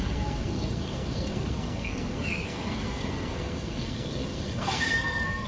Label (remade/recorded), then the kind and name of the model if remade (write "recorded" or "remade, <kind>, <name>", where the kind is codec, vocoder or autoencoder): remade, codec, SNAC